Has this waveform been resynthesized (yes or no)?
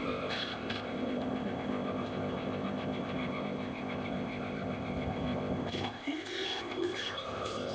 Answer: yes